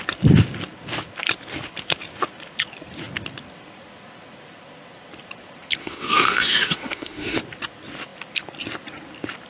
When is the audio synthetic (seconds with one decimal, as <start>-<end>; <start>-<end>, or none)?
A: 5.8-7.4